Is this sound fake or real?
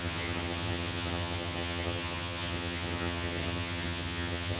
fake